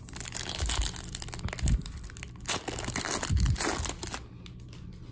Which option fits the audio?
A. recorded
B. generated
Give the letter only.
A